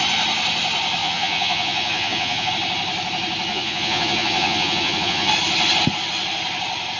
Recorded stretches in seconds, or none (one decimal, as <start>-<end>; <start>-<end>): 0.0-1.0; 2.5-3.5; 5.3-7.0